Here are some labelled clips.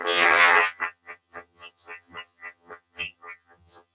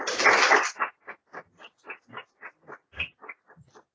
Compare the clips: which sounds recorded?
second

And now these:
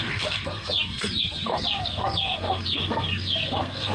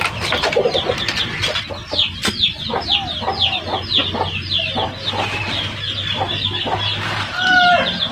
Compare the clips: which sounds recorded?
second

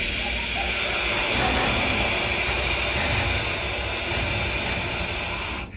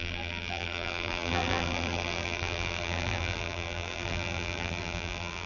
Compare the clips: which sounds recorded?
first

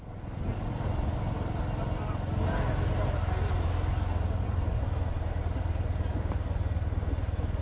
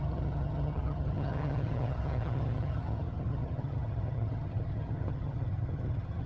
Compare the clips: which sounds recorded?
first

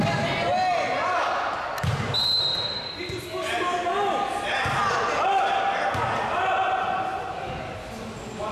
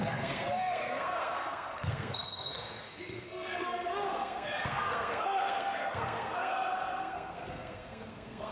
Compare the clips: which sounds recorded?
first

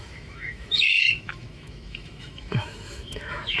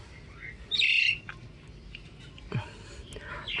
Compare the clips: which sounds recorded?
second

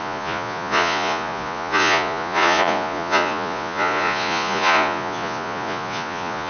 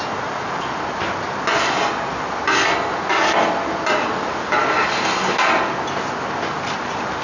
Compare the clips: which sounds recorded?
second